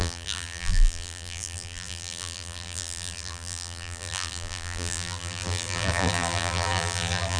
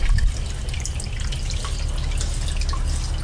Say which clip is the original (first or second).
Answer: second